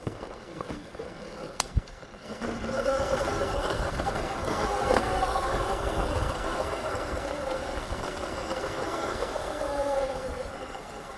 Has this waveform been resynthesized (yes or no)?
yes